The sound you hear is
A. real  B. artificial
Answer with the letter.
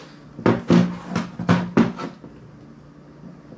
A